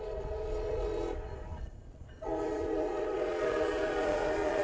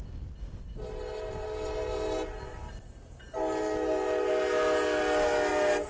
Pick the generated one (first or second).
first